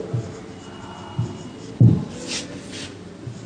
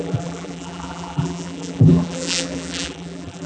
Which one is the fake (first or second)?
second